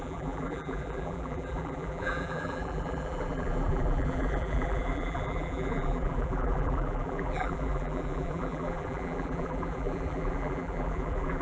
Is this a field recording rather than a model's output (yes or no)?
no